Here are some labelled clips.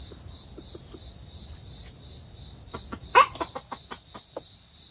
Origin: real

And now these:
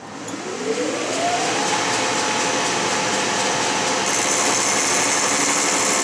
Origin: real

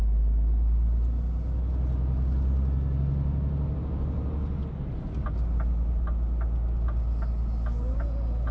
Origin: real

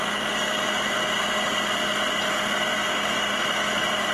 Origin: real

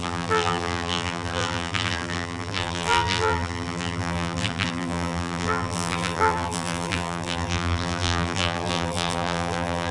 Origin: fake